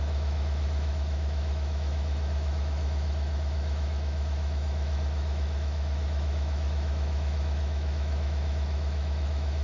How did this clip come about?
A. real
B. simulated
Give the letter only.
B